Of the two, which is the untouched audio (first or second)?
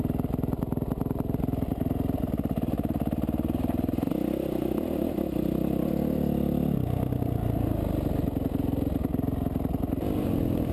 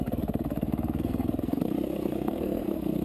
first